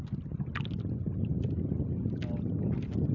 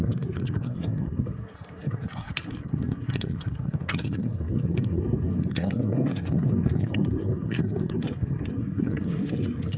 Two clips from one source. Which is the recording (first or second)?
first